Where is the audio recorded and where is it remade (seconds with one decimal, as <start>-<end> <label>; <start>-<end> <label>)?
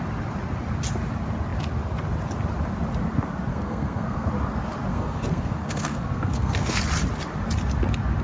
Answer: 0.0-3.5 recorded; 3.5-4.3 remade; 4.3-4.9 recorded; 4.9-6.8 remade; 6.8-8.2 recorded